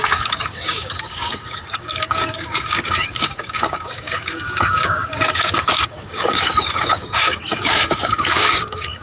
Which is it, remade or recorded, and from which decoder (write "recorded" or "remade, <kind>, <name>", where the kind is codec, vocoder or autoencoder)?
remade, codec, DAC